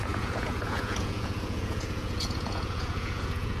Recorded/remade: remade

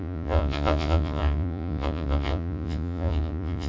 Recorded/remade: remade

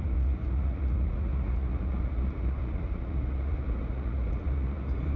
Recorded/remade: remade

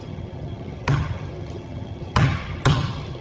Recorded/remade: remade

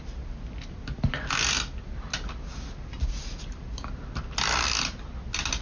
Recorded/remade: recorded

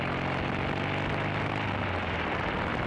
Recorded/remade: recorded